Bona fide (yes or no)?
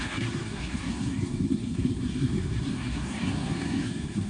no